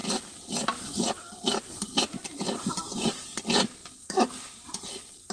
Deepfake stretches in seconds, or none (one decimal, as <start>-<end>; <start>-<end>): none